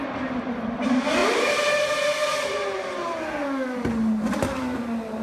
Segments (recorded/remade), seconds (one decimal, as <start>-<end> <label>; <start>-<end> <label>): 0.0-5.2 recorded